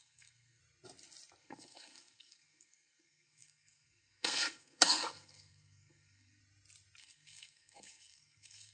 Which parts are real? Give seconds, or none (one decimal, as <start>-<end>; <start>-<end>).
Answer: 0.6-1.4; 6.4-7.0